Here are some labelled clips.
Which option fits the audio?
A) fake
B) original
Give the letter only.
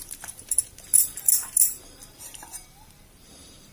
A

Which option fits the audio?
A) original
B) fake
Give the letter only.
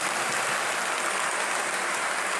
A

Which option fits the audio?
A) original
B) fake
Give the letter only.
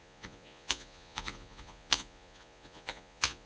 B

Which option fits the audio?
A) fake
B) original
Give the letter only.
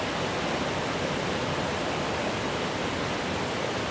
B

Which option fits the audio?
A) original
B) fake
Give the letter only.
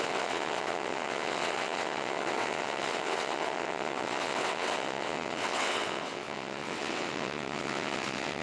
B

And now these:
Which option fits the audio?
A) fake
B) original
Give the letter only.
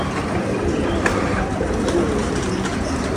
B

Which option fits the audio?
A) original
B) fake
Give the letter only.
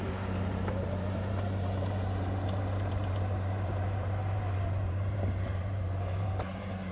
B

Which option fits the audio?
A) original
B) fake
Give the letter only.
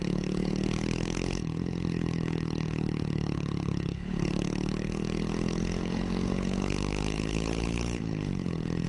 B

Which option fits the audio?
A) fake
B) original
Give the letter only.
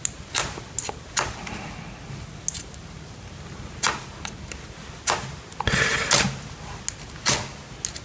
B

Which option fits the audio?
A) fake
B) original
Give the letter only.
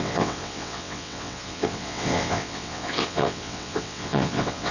A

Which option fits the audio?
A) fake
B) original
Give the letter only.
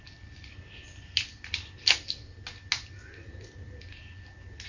B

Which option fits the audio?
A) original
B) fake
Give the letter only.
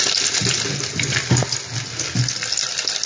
A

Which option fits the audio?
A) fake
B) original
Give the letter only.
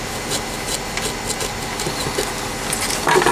B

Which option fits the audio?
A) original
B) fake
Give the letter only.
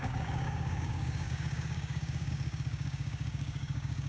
B